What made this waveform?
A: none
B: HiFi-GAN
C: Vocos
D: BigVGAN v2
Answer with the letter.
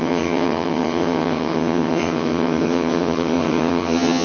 B